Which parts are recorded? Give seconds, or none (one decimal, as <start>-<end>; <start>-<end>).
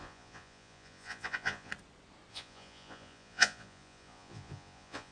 1.7-2.3